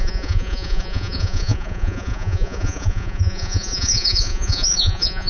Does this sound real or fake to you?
fake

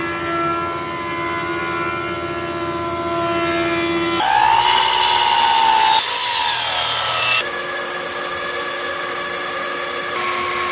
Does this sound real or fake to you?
real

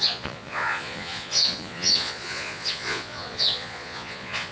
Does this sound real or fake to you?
fake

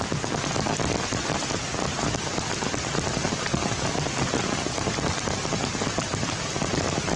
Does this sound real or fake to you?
real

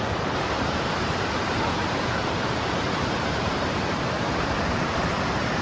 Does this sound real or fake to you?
fake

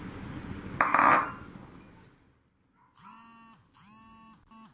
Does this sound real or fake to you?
real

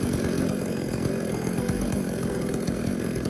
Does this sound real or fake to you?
fake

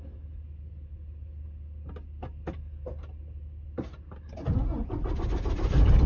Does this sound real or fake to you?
real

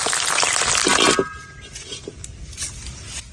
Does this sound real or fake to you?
real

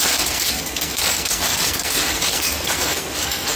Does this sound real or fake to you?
fake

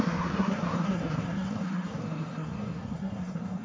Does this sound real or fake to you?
fake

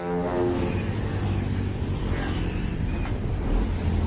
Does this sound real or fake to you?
real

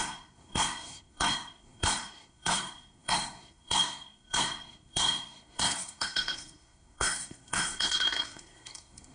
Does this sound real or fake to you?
fake